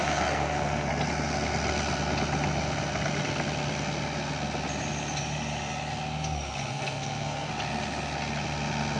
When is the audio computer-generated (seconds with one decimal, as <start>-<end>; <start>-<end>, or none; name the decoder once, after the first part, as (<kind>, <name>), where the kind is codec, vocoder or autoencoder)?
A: 0.0-0.9 (codec, SNAC); 6.7-7.5